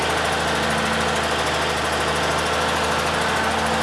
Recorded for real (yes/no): yes